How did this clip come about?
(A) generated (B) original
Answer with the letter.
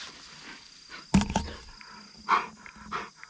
B